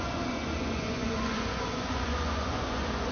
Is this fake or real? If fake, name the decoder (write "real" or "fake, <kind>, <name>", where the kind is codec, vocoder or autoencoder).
fake, vocoder, Vocos